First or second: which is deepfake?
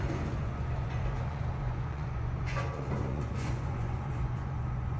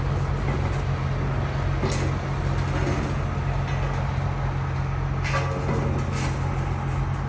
first